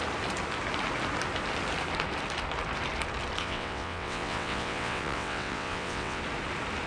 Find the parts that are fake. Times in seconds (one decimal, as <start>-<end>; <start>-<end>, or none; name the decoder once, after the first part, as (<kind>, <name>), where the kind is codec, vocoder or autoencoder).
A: 3.4-6.2 (vocoder, WaveNeXt)